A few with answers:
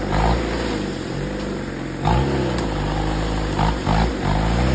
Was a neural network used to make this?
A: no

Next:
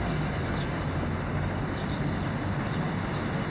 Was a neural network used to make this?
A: no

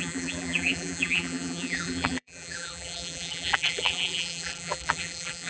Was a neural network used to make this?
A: yes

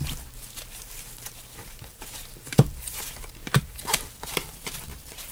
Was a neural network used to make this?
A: yes